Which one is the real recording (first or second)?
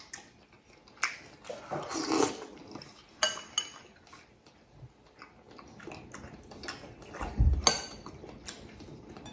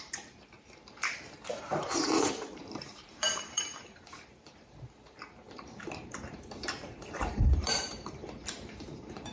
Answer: first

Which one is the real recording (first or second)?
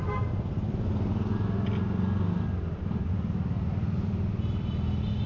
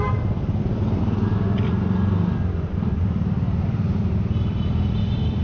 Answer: first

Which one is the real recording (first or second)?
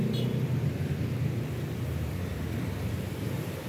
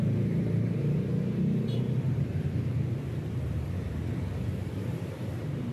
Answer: first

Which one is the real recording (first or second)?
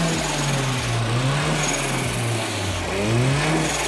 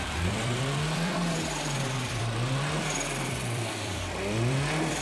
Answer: first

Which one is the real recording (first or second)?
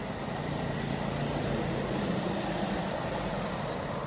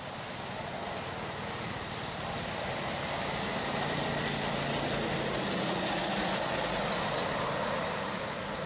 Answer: second